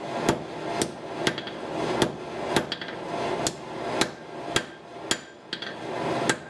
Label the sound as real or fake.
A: real